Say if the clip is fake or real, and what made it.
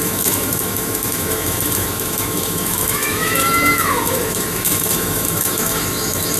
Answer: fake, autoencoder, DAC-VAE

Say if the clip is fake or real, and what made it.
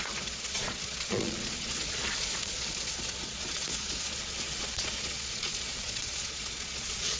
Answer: fake, vocoder, Vocos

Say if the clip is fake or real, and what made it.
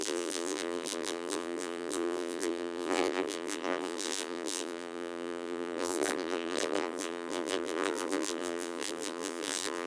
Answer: fake, vocoder, BigVGAN v2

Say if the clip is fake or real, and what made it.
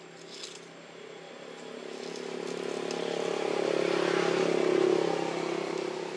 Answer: real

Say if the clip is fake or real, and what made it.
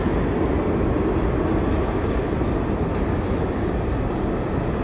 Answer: real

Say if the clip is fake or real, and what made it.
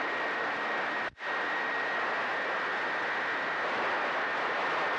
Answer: real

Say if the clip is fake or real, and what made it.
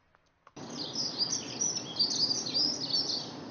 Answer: real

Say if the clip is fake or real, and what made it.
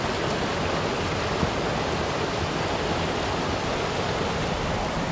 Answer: real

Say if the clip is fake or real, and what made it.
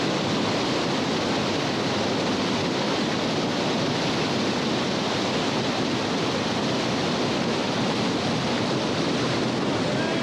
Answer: real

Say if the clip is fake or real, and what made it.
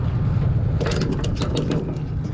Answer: real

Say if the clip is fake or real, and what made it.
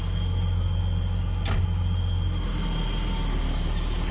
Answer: real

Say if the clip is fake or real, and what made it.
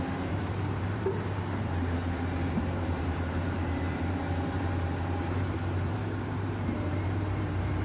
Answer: fake, vocoder, BigVGAN v2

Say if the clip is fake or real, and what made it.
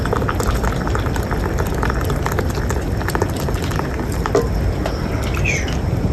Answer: real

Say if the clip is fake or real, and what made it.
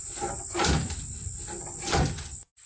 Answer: real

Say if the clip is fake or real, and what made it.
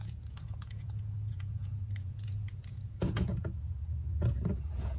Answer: fake, vocoder, Vocos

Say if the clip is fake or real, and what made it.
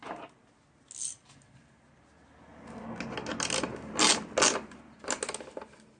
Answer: real